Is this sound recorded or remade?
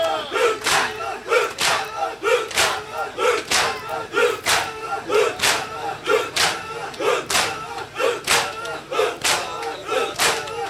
recorded